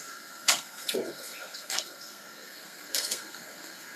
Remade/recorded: remade